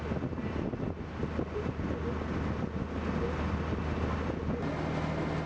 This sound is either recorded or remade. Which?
recorded